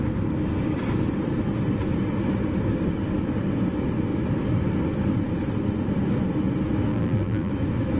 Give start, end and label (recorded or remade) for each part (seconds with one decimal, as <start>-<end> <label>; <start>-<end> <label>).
0.0-6.9 recorded; 6.9-7.5 remade; 7.5-8.0 recorded